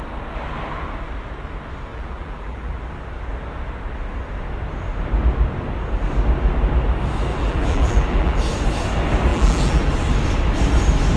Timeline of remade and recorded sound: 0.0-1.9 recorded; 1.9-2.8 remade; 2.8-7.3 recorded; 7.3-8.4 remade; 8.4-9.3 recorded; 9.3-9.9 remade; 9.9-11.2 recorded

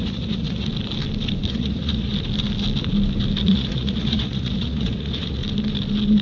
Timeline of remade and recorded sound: 0.0-0.7 remade; 0.7-1.5 recorded; 1.5-2.1 remade; 2.1-3.4 recorded; 3.4-5.4 remade; 5.4-6.2 recorded

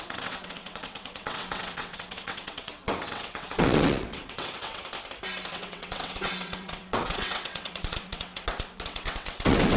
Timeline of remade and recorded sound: 0.0-4.8 remade; 4.8-5.5 recorded; 5.5-9.8 remade

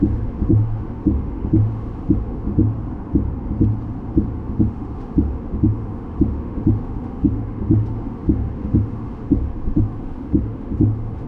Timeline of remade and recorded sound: 0.0-2.5 remade; 2.5-4.3 recorded; 4.3-11.3 remade

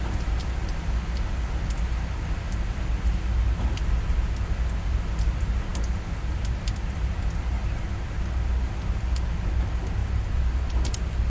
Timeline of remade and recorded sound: 0.0-11.3 recorded

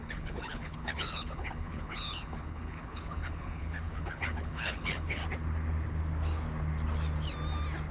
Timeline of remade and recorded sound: 0.0-5.2 remade; 5.2-7.9 recorded